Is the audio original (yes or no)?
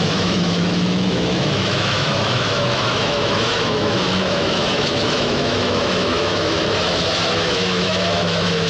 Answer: no